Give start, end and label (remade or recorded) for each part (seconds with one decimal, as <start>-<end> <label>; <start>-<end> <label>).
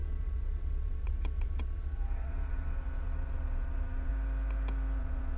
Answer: 0.0-4.1 remade; 4.1-5.0 recorded; 5.0-5.4 remade